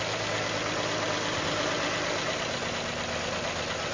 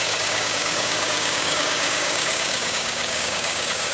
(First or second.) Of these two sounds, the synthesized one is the second